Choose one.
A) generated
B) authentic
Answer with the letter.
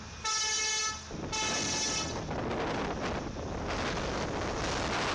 B